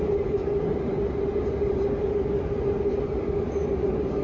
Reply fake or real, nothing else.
real